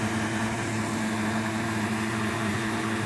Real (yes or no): no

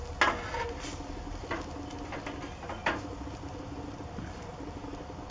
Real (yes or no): yes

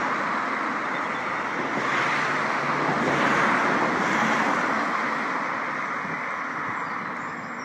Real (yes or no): yes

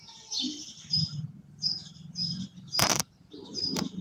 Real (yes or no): no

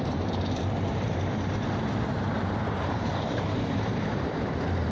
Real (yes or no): no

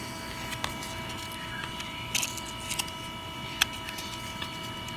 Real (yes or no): yes